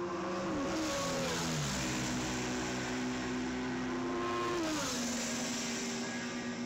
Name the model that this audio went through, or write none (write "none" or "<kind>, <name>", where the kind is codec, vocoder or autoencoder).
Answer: none